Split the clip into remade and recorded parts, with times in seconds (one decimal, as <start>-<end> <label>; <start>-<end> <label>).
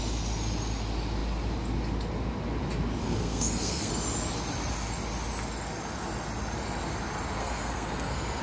0.0-3.0 recorded; 3.0-3.9 remade; 3.9-7.4 recorded; 7.4-8.4 remade